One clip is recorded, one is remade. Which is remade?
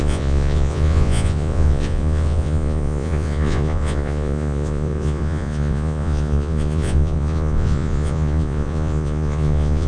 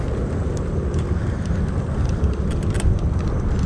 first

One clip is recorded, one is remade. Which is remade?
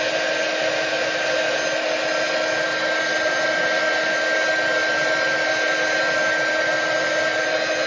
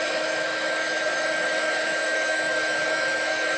second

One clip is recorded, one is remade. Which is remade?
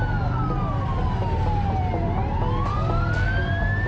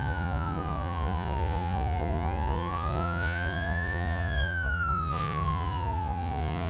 second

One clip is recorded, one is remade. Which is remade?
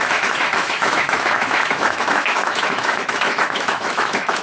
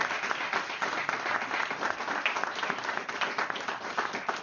first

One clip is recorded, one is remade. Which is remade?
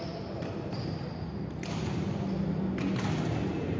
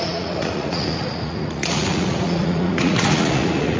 second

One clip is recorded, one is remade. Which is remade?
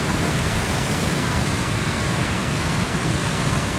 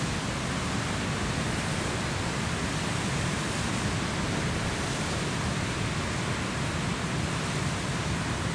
first